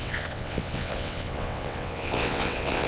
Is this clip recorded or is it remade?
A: remade